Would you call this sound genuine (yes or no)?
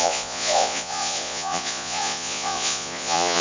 no